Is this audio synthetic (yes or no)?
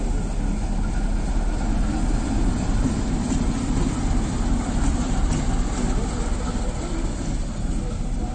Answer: no